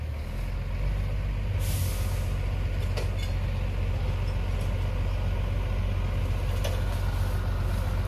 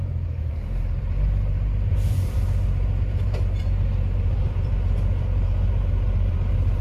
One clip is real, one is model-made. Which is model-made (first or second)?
second